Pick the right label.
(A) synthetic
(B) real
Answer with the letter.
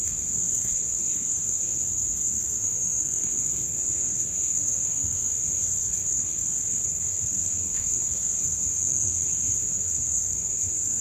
A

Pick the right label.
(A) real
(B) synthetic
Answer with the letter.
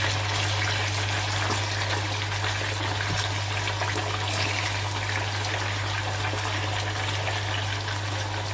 A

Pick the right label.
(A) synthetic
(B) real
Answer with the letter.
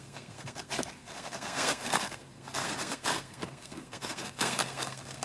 A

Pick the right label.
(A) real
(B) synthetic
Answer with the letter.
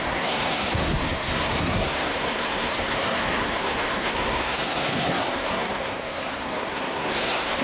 B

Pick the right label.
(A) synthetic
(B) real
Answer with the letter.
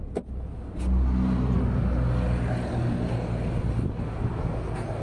B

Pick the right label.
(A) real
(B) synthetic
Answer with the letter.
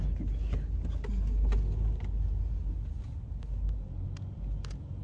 A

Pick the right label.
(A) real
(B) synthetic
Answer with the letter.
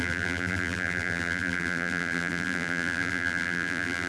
B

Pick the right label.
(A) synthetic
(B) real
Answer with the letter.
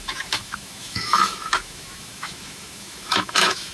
A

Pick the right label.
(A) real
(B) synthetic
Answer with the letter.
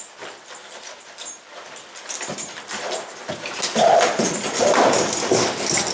A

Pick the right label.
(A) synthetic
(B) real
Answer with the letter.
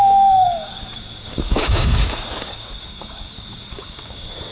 A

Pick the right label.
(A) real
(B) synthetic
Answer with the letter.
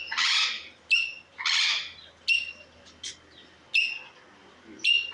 A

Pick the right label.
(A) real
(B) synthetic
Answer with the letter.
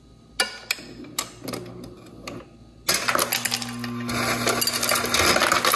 A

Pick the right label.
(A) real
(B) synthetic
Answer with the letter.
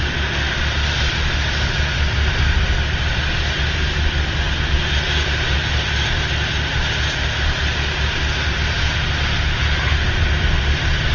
A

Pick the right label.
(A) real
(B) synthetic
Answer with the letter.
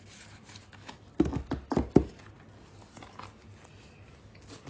A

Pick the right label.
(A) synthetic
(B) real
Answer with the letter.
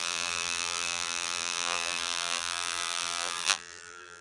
A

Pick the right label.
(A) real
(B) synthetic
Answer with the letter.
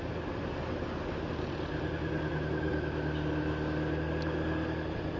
A